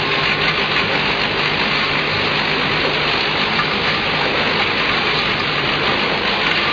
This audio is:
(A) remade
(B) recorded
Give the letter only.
B